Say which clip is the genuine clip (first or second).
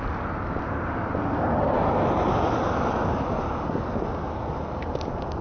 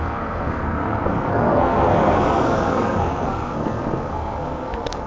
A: first